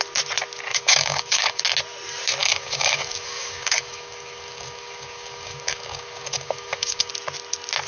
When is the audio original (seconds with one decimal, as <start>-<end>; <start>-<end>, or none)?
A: 0.0-0.7; 1.6-2.4; 7.1-7.9